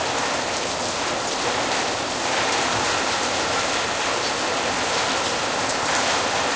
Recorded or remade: recorded